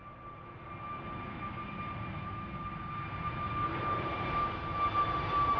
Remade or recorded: recorded